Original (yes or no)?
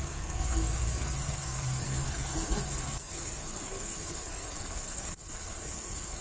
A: no